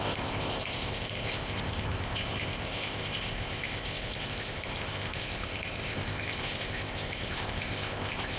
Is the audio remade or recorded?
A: remade